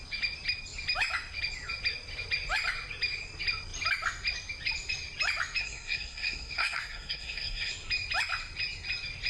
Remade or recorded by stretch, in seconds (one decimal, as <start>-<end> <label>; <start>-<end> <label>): 0.0-5.6 recorded; 5.6-7.7 remade; 7.7-9.3 recorded